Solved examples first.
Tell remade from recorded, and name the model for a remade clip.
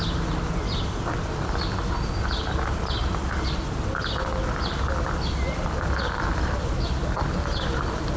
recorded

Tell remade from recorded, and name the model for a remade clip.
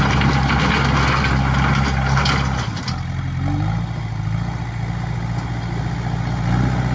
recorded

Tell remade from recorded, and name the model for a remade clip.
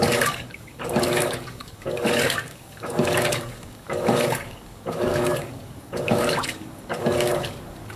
remade, codec, DAC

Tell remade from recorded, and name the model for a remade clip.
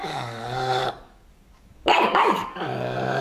remade, codec, DAC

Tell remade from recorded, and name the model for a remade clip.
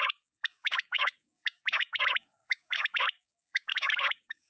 remade, codec, DAC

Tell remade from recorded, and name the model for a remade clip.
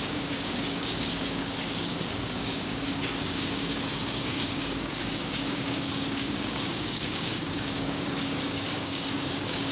remade, codec, DAC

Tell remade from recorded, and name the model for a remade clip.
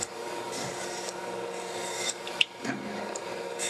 remade, codec, DAC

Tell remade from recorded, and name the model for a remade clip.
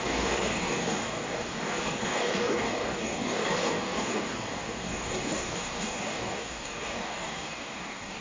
remade, codec, DAC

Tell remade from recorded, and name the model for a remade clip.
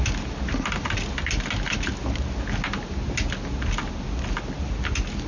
recorded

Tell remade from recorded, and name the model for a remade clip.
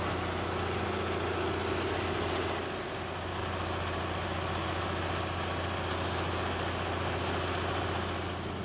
recorded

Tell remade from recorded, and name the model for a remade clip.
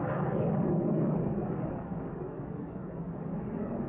remade, codec, DAC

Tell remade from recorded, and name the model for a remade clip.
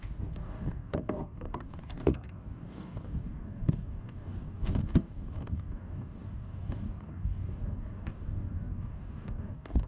remade, codec, DAC